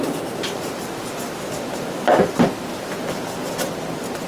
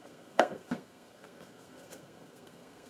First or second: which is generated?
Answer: second